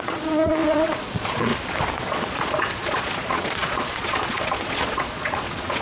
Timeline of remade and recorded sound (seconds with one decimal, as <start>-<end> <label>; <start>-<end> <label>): 0.0-1.5 remade; 1.5-2.0 recorded; 2.0-5.8 remade